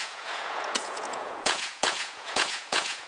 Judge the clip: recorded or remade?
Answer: remade